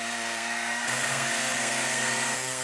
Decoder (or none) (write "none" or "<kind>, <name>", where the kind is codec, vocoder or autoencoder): codec, SNAC